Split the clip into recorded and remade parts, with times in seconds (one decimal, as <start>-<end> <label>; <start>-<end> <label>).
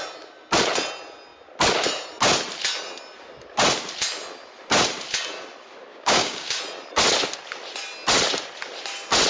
0.0-5.9 recorded; 5.9-6.6 remade; 6.6-9.3 recorded